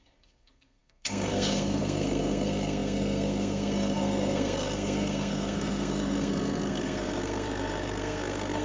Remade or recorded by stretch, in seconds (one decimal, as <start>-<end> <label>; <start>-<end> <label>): 0.0-8.6 remade